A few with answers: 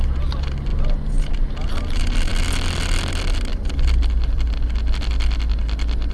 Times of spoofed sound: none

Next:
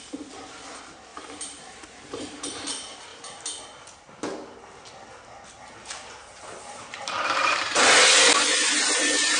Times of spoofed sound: 1.1-2.7 (vocoder, BigVGAN v2); 3.1-3.6; 6.2-7.8

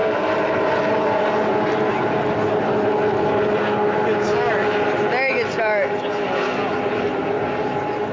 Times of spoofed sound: 0.0-1.0 (vocoder, BigVGAN v2)